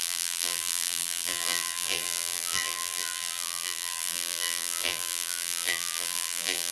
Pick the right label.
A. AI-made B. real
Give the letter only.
A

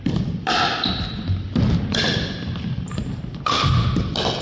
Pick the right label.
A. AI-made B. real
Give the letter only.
B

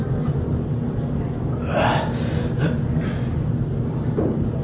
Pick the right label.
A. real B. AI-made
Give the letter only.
A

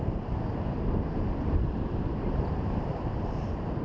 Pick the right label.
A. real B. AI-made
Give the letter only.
B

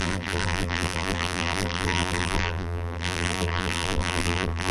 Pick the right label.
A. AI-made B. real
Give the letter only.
A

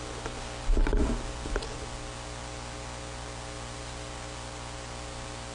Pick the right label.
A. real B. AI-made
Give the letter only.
A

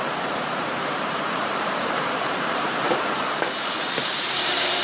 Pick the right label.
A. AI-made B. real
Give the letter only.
A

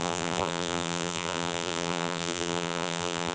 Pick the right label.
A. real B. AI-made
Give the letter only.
B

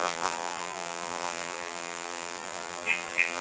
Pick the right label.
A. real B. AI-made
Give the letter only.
B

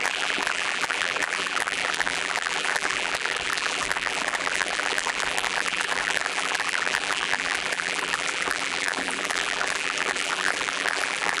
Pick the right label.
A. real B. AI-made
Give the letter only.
B